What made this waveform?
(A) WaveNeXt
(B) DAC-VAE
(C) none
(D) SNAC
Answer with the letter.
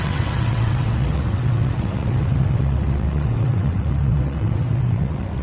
A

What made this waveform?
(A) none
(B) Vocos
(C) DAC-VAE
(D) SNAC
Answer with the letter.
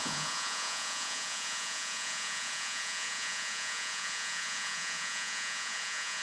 B